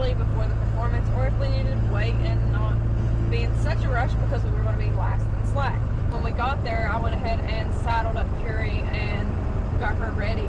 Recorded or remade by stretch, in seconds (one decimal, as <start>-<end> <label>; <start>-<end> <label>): 0.0-5.8 recorded; 5.8-10.1 remade; 10.1-10.5 recorded